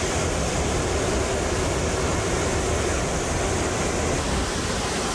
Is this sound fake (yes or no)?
no